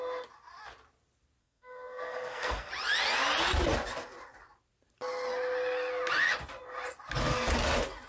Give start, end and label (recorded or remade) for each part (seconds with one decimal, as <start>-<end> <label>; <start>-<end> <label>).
0.0-1.4 recorded; 1.4-2.7 remade; 2.7-8.1 recorded